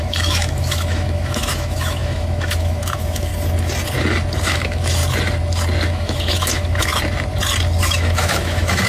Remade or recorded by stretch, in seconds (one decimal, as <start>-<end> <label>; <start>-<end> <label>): 0.0-3.3 remade; 3.3-4.4 recorded; 4.4-5.0 remade; 5.0-5.9 recorded; 5.9-6.9 remade; 6.9-7.8 recorded; 7.8-8.9 remade